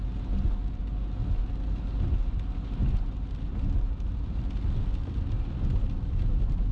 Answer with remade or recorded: recorded